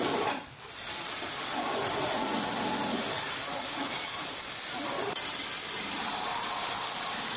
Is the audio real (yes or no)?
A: yes